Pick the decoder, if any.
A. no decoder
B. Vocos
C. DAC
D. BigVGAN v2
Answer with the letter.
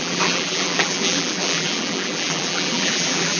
D